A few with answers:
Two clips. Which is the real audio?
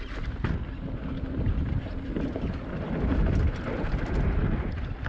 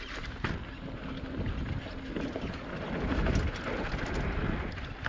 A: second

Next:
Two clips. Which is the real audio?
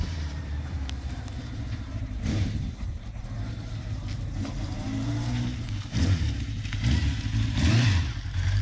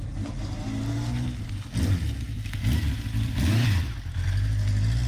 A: second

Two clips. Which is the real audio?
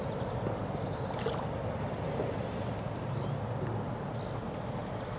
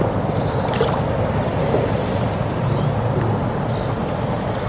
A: first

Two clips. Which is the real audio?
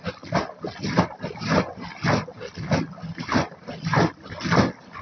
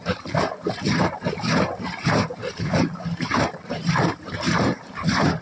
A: first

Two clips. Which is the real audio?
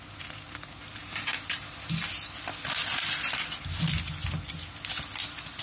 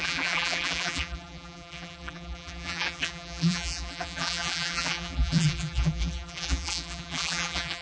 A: first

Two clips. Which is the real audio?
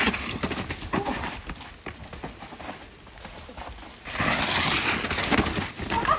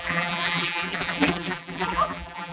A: first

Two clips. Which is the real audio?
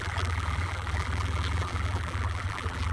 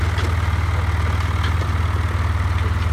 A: second